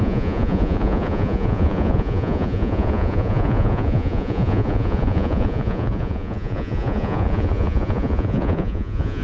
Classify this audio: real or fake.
fake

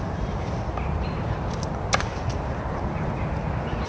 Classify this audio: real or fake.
real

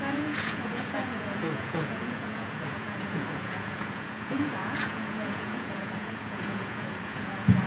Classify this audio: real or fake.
fake